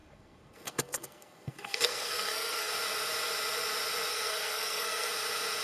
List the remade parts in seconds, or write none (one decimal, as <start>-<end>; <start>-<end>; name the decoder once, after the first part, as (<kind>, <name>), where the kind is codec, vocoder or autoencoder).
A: 0.0-2.7 (codec, SNAC); 4.1-5.1